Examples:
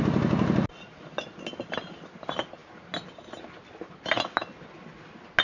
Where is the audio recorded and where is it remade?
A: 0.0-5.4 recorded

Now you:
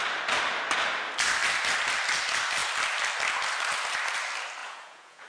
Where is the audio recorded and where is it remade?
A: 0.0-4.6 recorded; 4.6-5.3 remade

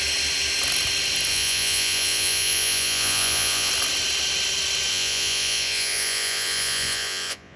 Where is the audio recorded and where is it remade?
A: 0.0-1.3 recorded; 1.3-3.7 remade; 3.7-4.9 recorded; 4.9-7.6 remade

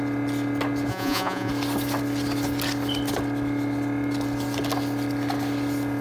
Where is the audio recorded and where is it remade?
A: 0.0-0.9 recorded; 0.9-1.5 remade; 1.5-6.0 recorded